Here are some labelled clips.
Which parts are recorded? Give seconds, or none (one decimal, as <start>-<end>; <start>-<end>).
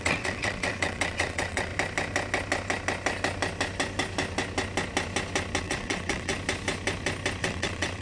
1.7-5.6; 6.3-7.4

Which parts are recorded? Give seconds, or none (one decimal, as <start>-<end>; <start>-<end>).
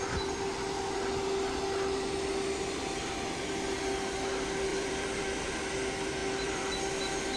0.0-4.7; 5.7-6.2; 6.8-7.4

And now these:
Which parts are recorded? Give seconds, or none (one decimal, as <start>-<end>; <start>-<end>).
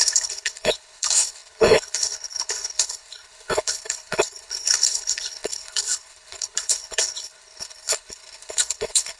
none